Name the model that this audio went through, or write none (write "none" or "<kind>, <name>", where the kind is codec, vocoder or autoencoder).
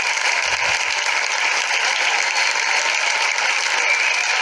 none